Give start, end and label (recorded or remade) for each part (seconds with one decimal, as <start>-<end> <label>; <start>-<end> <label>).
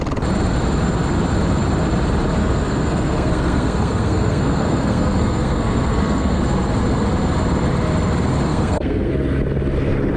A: 0.0-2.4 recorded; 2.4-6.4 remade; 6.4-8.5 recorded; 8.5-9.1 remade; 9.1-10.2 recorded